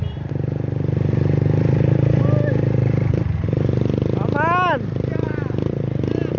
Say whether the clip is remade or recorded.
recorded